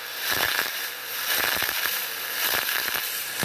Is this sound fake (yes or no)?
yes